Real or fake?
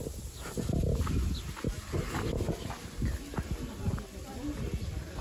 real